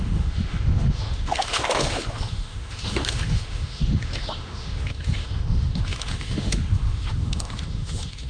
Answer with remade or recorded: remade